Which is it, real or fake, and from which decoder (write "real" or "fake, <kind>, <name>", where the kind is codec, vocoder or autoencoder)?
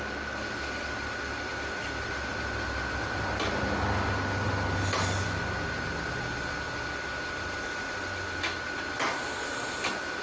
real